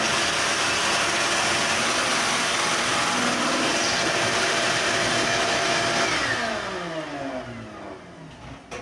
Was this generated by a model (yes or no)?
no